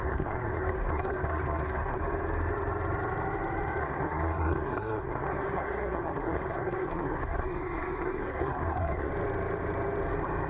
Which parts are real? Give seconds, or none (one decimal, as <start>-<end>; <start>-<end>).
2.0-3.8; 9.1-10.5